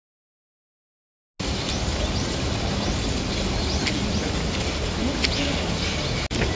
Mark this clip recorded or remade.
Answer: recorded